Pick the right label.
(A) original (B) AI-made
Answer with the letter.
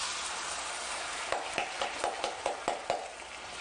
A